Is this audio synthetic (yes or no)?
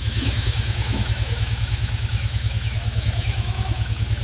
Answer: yes